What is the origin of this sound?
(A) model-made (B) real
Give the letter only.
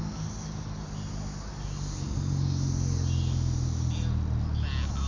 B